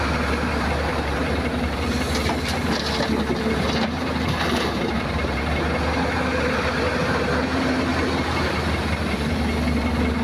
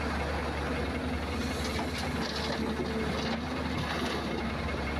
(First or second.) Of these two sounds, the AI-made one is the first